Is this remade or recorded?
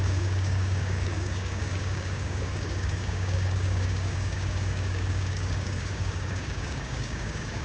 remade